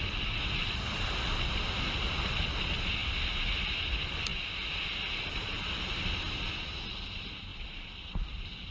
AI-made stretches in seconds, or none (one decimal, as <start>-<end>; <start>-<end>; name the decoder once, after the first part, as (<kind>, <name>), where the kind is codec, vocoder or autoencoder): none